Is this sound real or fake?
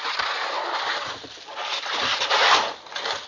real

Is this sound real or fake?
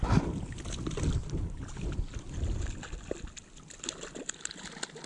real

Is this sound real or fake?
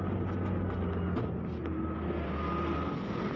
real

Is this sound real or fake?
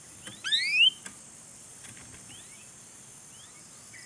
real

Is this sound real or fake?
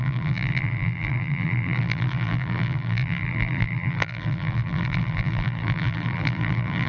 fake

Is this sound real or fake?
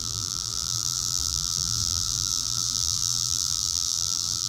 fake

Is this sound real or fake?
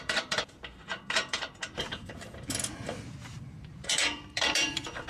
fake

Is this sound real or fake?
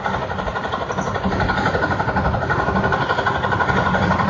real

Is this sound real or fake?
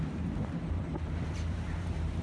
fake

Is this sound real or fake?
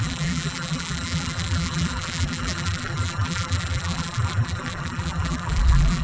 fake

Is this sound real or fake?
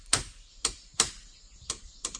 fake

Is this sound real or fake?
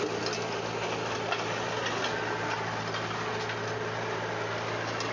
real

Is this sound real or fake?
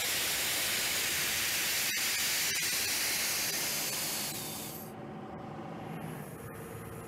real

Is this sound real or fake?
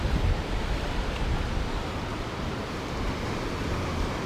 real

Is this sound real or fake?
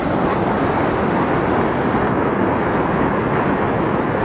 real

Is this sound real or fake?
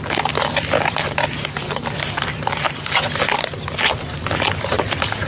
real